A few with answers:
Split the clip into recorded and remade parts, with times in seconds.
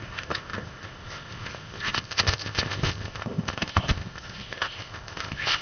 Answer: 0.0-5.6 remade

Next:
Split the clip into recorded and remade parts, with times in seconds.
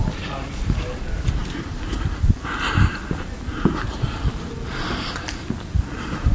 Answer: 0.0-6.3 remade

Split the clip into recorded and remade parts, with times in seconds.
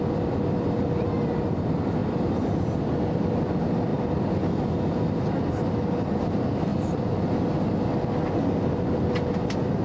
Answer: 0.0-2.0 recorded; 2.0-2.9 remade; 2.9-6.7 recorded; 6.7-7.6 remade; 7.6-9.8 recorded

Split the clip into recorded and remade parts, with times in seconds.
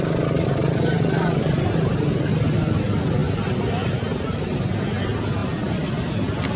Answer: 0.0-6.6 recorded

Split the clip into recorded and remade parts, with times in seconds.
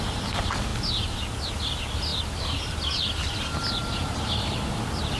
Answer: 0.0-5.2 recorded